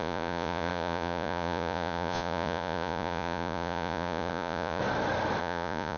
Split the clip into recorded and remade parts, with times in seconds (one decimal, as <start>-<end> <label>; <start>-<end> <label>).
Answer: 0.0-4.8 remade; 4.8-5.4 recorded; 5.4-6.0 remade

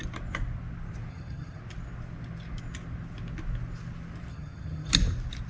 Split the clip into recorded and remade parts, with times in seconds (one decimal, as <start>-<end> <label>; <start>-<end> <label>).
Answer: 0.0-1.1 recorded; 1.1-1.6 remade; 1.6-4.3 recorded; 4.3-4.9 remade; 4.9-5.5 recorded